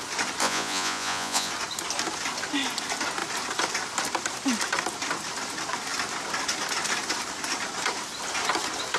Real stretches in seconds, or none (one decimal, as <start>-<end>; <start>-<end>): 0.0-0.4; 1.5-9.0